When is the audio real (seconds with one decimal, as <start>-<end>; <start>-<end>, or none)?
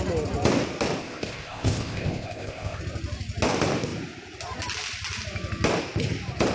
0.0-1.0; 2.8-6.5